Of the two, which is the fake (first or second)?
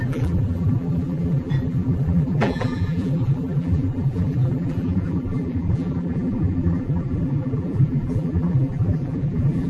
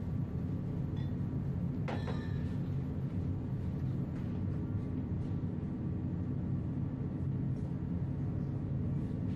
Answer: first